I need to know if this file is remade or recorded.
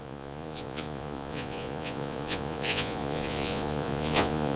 remade